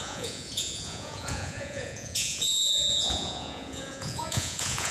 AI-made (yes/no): yes